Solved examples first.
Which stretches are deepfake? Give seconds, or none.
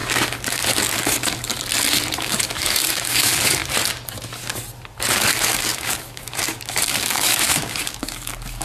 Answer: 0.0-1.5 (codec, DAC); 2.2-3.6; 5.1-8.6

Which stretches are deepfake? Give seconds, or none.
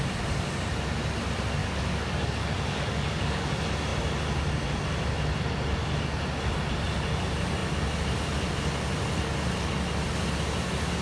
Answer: 1.6-3.5 (codec, DAC)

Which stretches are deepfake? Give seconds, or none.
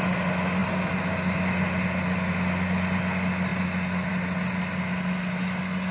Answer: none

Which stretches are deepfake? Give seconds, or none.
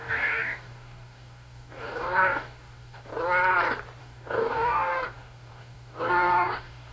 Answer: 0.0-3.1 (codec, DAC); 4.0-6.9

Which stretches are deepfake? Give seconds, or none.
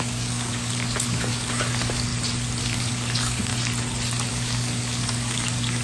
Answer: 0.0-2.1 (codec, DAC); 2.6-3.5; 4.3-5.8